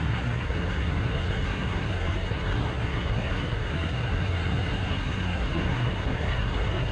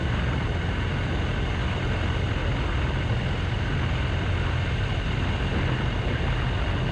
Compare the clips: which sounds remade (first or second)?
first